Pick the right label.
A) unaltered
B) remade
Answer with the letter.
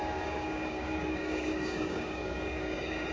B